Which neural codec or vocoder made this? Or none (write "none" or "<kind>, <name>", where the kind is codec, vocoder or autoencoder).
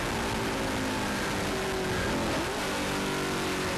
none